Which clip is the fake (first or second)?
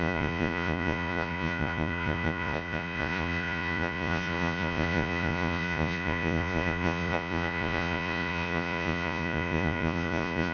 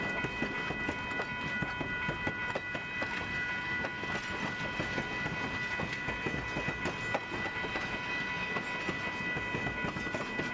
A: first